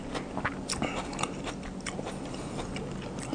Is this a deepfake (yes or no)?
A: no